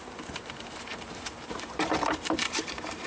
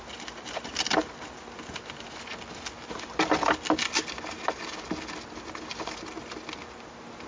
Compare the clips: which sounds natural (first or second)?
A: second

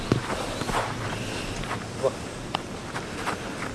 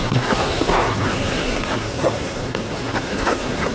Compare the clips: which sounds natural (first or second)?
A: first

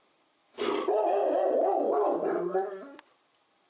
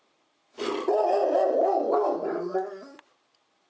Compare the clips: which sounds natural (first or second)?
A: second